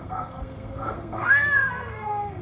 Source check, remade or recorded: remade